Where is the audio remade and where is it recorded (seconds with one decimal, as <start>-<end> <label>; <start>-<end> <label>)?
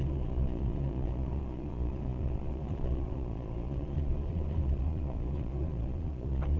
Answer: 0.0-6.6 remade